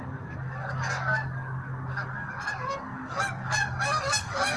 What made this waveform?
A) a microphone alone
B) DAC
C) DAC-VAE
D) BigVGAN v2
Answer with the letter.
B